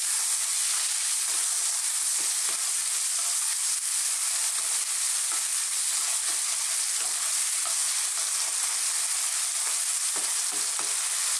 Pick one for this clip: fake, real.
real